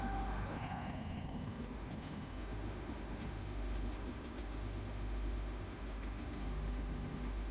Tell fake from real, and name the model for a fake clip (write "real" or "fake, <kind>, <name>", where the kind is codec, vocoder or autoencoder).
fake, autoencoder, DAC-VAE